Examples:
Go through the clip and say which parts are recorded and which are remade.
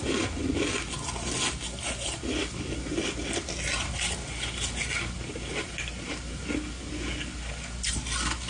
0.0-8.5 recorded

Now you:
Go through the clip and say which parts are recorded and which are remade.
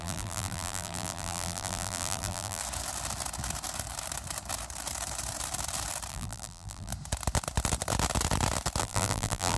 0.0-2.6 remade; 2.6-6.1 recorded; 6.1-6.9 remade; 6.9-8.8 recorded; 8.8-9.6 remade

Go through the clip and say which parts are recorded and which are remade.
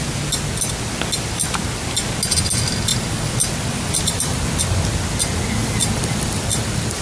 0.0-2.9 recorded; 2.9-4.7 remade; 4.7-5.6 recorded; 5.6-7.0 remade